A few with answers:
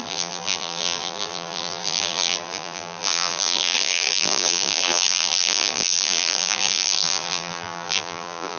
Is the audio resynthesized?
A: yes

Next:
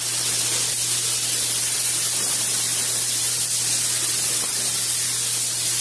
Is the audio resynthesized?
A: no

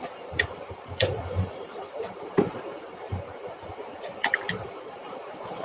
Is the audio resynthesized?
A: yes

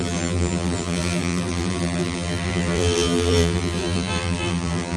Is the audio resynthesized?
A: yes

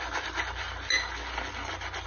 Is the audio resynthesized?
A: no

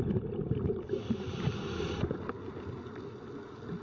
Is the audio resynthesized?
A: no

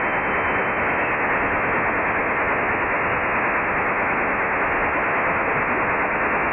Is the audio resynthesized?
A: no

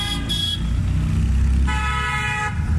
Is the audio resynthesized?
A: no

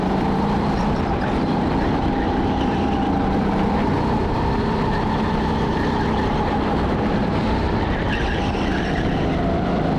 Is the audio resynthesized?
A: yes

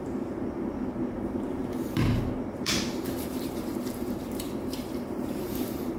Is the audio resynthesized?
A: yes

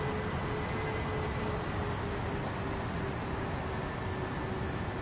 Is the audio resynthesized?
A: no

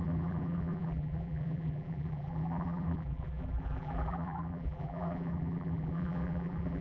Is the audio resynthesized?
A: yes